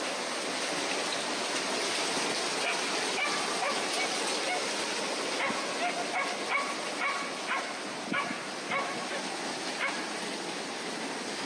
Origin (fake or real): real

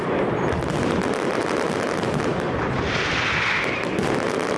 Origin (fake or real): real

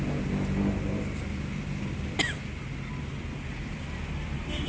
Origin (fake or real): real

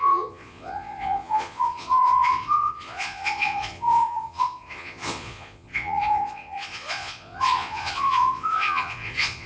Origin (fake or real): fake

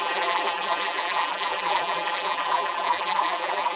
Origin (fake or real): fake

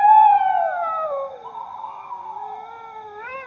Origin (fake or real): real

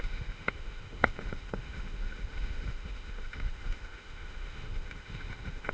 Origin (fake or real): fake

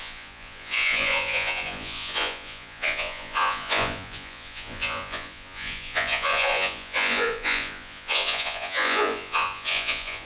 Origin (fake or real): fake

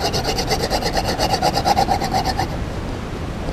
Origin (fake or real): real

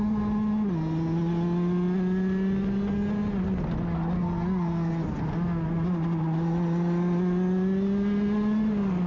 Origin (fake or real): real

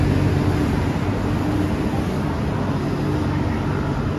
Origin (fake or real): real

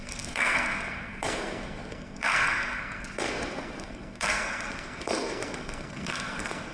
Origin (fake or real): fake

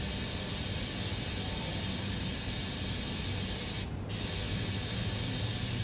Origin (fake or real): real